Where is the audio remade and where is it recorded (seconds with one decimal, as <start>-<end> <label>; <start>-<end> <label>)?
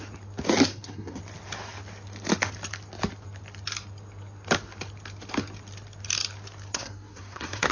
0.0-0.7 recorded; 0.7-1.2 remade; 1.2-6.7 recorded; 6.7-7.7 remade